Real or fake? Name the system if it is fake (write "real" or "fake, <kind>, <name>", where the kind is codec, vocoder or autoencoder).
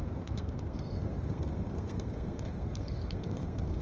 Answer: fake, codec, SNAC